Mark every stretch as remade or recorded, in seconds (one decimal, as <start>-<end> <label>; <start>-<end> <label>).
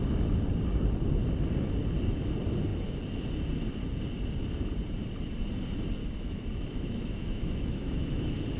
0.0-6.0 recorded; 6.0-8.6 remade